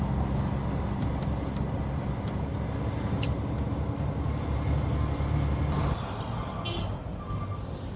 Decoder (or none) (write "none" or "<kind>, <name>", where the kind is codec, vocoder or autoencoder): none